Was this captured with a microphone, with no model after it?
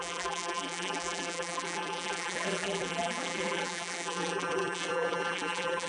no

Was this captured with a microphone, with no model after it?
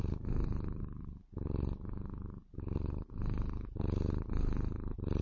yes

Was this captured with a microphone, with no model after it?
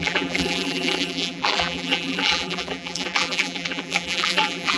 no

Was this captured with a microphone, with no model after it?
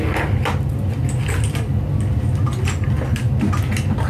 yes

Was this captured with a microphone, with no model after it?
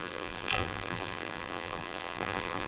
no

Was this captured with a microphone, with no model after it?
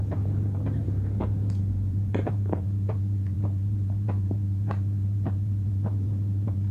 no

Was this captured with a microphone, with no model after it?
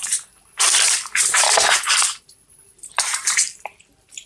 no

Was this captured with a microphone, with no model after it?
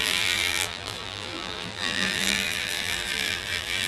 no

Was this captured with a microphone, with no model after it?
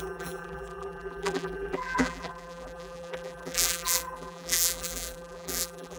no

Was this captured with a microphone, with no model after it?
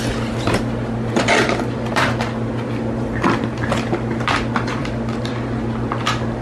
no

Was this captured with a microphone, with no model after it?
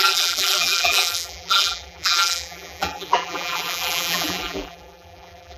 no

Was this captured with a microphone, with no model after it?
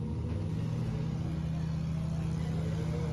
yes